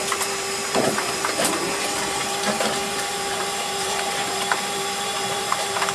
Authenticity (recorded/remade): remade